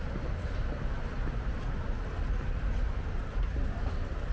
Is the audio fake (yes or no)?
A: no